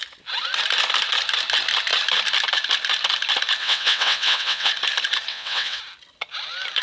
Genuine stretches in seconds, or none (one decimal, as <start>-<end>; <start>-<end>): 0.0-3.6; 4.7-5.3; 5.8-6.8